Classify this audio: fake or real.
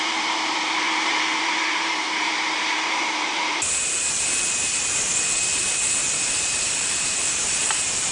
fake